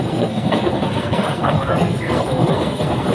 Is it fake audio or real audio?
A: fake